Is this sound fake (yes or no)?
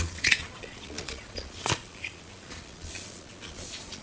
yes